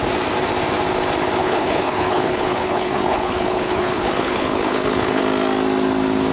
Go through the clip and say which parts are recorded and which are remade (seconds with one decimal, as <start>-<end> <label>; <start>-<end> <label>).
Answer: 0.0-1.4 recorded; 1.4-5.2 remade; 5.2-6.3 recorded